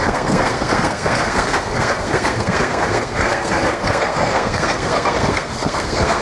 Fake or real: fake